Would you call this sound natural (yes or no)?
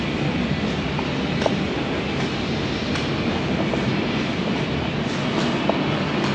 yes